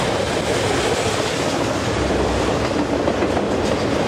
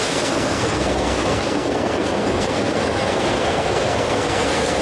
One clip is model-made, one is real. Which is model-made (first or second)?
second